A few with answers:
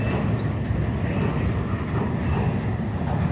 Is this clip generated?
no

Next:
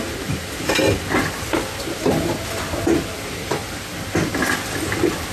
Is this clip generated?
no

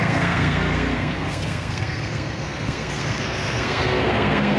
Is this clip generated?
yes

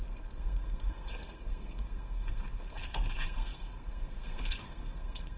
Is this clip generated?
yes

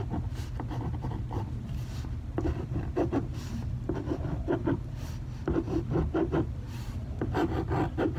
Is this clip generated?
no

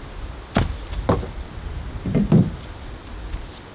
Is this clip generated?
no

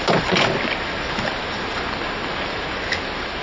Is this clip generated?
no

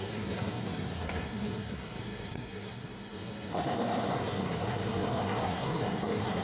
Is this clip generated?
yes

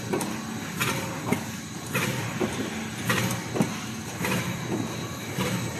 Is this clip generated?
no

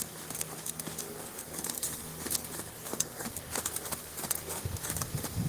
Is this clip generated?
yes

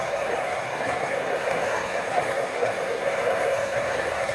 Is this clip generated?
yes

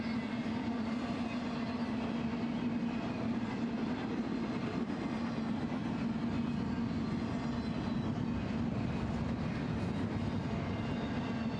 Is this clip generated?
no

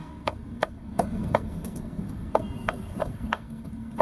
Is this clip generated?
yes